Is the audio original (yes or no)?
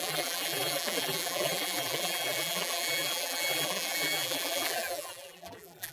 no